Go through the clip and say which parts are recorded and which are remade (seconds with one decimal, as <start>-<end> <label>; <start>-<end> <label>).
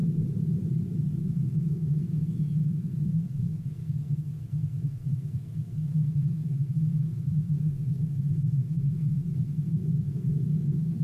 0.0-1.2 recorded; 1.2-11.0 remade